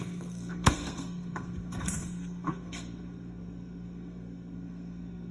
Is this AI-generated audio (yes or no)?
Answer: yes